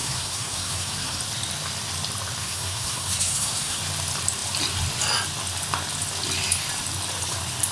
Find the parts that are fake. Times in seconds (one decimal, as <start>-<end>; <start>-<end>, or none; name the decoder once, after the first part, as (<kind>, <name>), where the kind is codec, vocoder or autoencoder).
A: 0.0-1.2 (codec, SNAC); 2.4-3.8